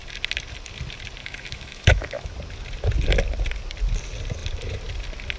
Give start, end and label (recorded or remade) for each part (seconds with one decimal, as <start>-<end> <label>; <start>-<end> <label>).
0.0-1.2 recorded; 1.2-2.3 remade; 2.3-5.4 recorded

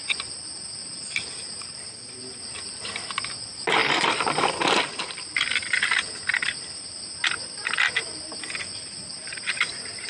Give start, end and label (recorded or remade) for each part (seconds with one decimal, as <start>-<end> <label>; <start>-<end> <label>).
0.0-0.8 recorded; 0.8-1.8 remade; 1.8-8.7 recorded; 8.7-10.1 remade

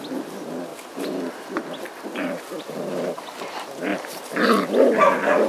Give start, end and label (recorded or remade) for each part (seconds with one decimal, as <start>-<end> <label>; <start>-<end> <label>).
0.0-0.7 recorded; 0.7-3.5 remade; 3.5-3.9 recorded; 3.9-4.8 remade; 4.8-5.5 recorded

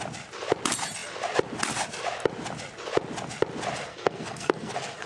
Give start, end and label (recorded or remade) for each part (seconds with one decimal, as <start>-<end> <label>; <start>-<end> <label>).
0.0-3.9 recorded; 3.9-5.1 remade

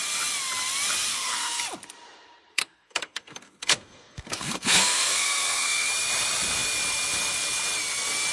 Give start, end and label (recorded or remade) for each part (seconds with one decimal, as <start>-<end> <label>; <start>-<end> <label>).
0.0-1.1 recorded; 1.1-1.6 remade; 1.6-2.5 recorded; 2.5-5.9 remade; 5.9-8.3 recorded